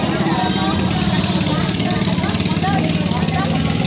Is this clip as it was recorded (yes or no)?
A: yes